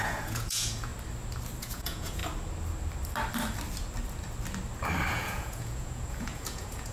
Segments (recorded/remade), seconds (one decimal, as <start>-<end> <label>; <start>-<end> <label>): 0.0-0.9 remade; 0.9-1.6 recorded; 1.6-2.2 remade; 2.2-5.1 recorded; 5.1-6.9 remade